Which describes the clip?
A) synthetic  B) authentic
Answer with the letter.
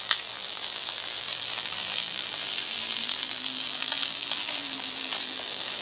A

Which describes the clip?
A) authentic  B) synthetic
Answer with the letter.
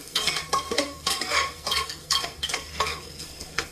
B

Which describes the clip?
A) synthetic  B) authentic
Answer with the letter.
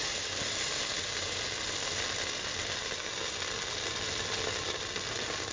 B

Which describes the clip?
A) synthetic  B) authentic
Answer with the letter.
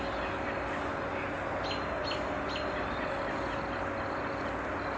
B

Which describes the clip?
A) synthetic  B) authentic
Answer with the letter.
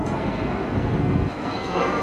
A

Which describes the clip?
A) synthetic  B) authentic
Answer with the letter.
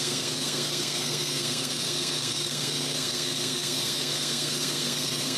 A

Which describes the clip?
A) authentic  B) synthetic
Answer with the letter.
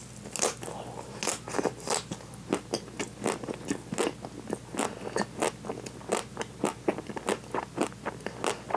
A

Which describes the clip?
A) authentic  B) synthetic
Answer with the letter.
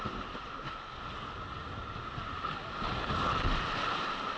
A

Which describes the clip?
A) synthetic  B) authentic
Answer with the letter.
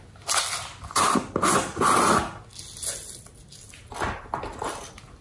B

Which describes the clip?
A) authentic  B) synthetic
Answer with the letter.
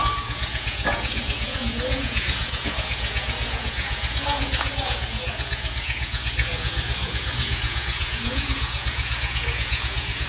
B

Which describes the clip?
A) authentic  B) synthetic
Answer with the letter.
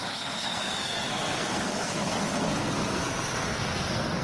B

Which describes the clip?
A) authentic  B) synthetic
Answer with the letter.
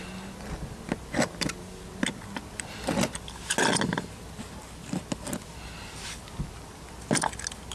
A